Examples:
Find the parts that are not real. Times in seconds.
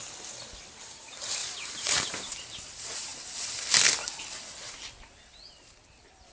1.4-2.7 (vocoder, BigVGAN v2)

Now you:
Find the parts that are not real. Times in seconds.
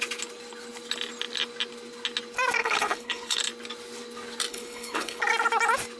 2.6-3.4 (codec, HILCodec); 4.5-5.2